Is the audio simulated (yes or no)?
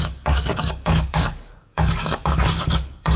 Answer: yes